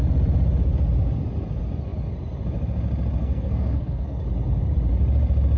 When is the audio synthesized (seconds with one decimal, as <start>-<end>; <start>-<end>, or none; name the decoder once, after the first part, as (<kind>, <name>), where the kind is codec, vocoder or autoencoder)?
3.2-4.2 (codec, SNAC)